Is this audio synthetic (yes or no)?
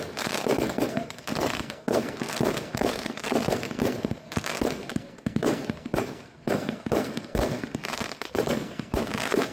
yes